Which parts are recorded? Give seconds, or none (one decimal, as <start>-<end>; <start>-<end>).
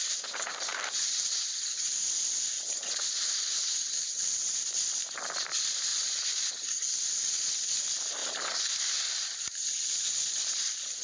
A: 5.9-6.5; 8.2-8.8